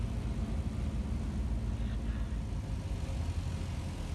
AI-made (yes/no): no